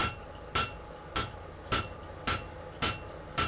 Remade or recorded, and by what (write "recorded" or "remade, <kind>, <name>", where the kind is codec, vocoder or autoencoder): recorded